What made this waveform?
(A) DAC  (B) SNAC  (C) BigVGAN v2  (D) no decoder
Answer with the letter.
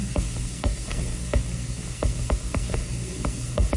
B